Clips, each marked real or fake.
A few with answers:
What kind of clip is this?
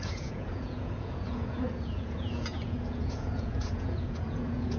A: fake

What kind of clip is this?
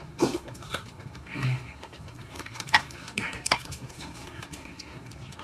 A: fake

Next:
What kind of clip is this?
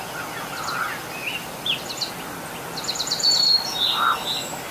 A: real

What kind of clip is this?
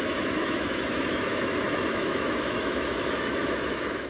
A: fake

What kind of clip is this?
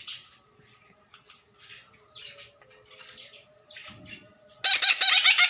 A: real